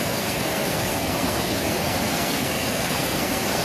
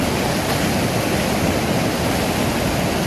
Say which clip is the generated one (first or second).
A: first